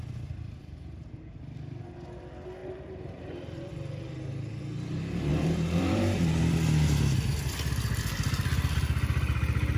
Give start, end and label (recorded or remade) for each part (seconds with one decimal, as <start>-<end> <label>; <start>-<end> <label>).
0.0-0.6 recorded; 0.6-1.4 remade; 1.4-2.6 recorded; 2.6-3.7 remade; 3.7-5.3 recorded; 5.3-6.4 remade; 6.4-9.8 recorded